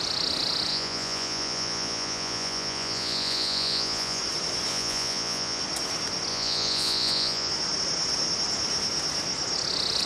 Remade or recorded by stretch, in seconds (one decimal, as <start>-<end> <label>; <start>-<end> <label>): 0.0-0.7 recorded; 0.7-4.2 remade; 4.2-4.7 recorded; 4.7-5.6 remade; 5.6-6.3 recorded; 6.3-7.5 remade; 7.5-10.1 recorded